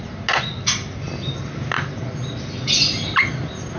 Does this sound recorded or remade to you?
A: recorded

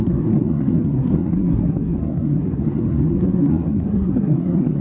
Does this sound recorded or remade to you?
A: remade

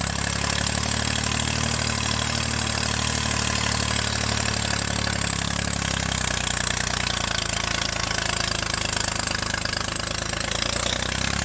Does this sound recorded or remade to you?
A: recorded